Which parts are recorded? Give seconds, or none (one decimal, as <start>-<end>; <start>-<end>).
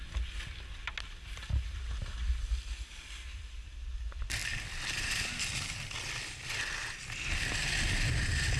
0.0-4.4; 5.5-8.6